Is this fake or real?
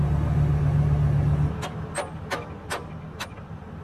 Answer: real